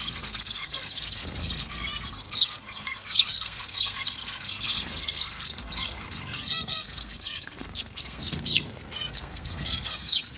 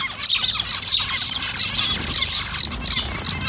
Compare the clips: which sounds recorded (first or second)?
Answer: second